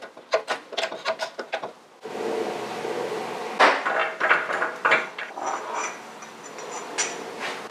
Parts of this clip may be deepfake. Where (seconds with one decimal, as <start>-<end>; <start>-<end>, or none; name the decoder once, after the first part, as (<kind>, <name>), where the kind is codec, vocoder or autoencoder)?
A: none